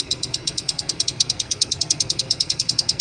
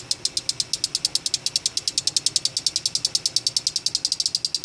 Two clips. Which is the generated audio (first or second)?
first